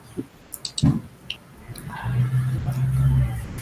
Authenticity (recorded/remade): recorded